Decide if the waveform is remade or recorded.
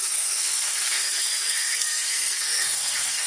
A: remade